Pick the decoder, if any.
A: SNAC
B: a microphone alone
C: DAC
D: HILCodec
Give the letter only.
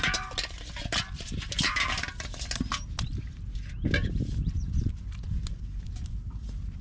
B